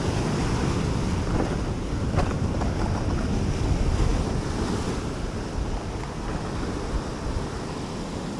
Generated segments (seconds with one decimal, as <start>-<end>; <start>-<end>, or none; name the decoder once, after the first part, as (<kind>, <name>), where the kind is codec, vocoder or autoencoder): none